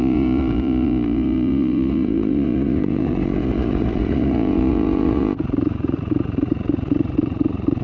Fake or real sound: fake